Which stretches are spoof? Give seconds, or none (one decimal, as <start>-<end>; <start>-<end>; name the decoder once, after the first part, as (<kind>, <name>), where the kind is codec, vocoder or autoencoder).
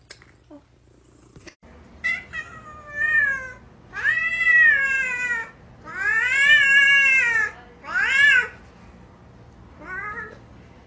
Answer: none